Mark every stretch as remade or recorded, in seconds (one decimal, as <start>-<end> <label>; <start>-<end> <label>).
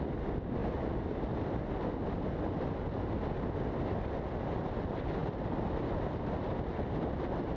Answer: 0.0-7.6 recorded